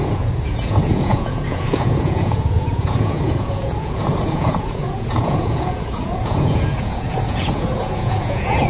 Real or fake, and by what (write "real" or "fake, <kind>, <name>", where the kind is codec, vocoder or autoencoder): fake, vocoder, Vocos